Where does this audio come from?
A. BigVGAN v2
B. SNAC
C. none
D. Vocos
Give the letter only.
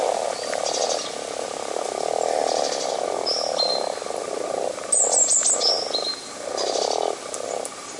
C